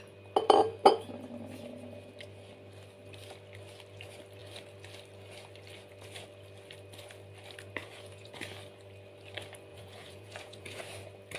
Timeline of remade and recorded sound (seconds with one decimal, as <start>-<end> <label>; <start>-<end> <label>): 0.0-7.8 recorded; 7.8-8.4 remade; 8.4-9.7 recorded; 9.7-10.8 remade; 10.8-11.4 recorded